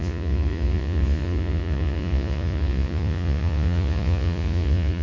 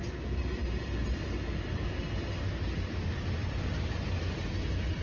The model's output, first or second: first